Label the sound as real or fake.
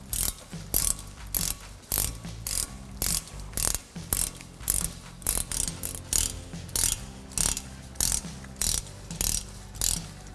real